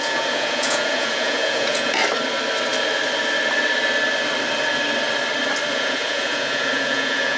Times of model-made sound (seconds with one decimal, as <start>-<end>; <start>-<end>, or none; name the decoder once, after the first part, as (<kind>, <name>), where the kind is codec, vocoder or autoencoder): 0.0-2.0 (vocoder, Vocos); 5.7-7.4